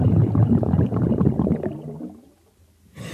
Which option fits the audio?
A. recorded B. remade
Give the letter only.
A